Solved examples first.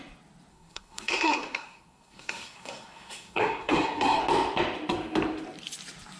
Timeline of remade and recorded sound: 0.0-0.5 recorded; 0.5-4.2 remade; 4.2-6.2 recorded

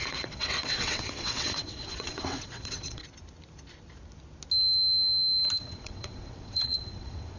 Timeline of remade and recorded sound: 0.0-3.0 remade; 3.0-5.6 recorded; 5.6-7.4 remade

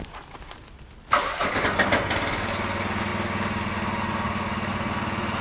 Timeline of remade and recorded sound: 0.0-5.4 recorded